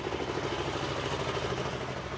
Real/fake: real